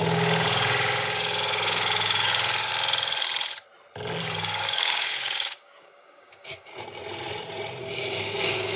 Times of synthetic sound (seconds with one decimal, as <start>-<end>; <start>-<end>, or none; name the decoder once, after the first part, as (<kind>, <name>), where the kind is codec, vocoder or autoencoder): 0.0-2.7 (codec, DAC); 4.2-6.7; 7.8-8.8